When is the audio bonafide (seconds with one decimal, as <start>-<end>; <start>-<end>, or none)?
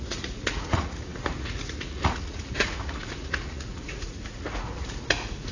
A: none